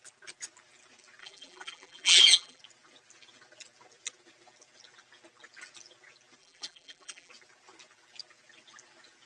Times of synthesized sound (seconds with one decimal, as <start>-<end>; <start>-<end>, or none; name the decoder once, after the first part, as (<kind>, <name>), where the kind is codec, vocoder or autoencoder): 1.2-2.6 (vocoder, BigVGAN v2); 6.4-7.3